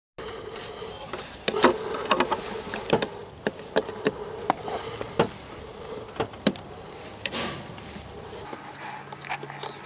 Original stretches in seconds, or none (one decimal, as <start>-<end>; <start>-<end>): 0.0-3.2; 8.3-9.9